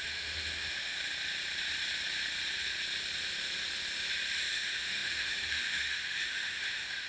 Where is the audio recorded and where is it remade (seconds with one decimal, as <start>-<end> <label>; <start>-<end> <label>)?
0.0-1.0 remade; 1.0-4.5 recorded; 4.5-7.1 remade